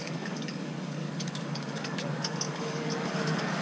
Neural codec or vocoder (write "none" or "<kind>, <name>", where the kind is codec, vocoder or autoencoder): codec, DAC